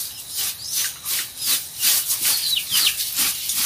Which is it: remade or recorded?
remade